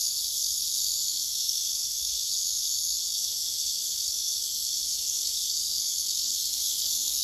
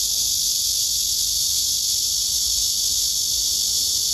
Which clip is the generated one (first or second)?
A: first